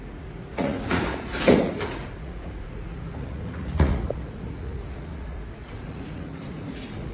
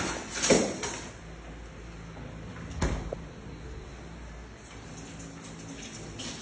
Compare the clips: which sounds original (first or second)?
second